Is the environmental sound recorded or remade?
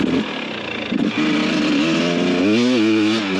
recorded